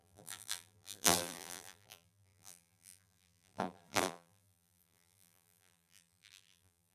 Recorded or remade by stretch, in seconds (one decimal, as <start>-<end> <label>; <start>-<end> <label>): 0.0-6.9 remade